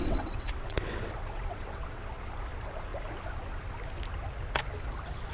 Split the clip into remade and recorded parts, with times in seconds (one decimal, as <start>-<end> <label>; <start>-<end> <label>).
0.0-2.0 remade; 2.0-5.3 recorded